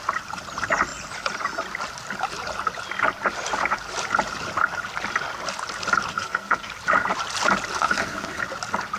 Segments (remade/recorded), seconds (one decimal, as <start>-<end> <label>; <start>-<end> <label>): 0.0-6.1 recorded; 6.1-6.7 remade; 6.7-7.8 recorded; 7.8-8.4 remade; 8.4-9.0 recorded